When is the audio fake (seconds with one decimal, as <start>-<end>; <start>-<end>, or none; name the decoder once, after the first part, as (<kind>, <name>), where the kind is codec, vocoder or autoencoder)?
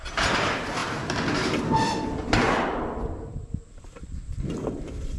0.0-5.2 (vocoder, BigVGAN v2)